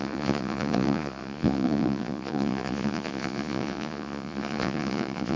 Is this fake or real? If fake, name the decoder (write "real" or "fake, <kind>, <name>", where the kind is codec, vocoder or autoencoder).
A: fake, vocoder, Vocos